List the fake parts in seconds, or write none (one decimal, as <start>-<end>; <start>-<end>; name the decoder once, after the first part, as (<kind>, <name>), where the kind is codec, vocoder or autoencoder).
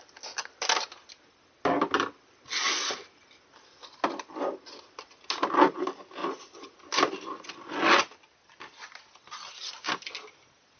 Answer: none